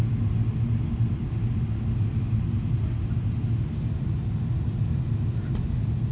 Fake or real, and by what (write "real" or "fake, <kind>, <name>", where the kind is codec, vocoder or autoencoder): real